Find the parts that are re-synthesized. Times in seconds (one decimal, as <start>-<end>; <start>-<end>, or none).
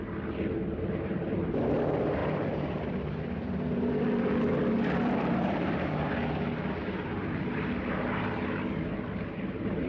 2.2-5.8